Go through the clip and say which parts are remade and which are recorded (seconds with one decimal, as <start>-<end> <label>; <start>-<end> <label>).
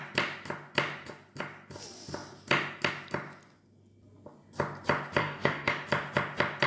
0.0-5.2 recorded; 5.2-5.7 remade; 5.7-6.7 recorded